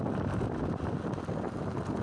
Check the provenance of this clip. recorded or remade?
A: recorded